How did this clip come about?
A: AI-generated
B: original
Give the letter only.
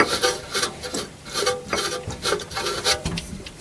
A